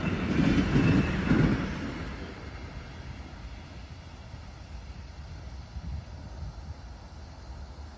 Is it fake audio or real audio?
real